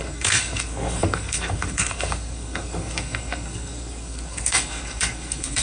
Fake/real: fake